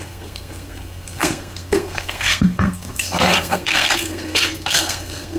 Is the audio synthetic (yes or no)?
yes